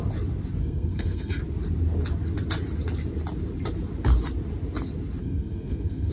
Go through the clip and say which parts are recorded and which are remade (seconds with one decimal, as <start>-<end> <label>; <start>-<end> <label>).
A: 0.0-0.6 recorded; 0.6-1.4 remade; 1.4-5.2 recorded; 5.2-6.1 remade